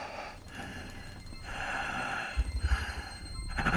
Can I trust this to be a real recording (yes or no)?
no